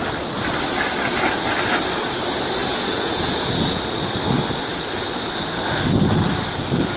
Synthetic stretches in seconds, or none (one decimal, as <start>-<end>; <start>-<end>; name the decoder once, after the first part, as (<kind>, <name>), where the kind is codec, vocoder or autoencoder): 2.6-3.8 (vocoder, Vocos)